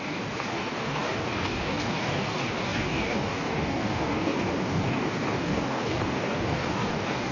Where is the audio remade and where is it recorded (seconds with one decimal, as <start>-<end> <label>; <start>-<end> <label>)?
0.0-7.3 remade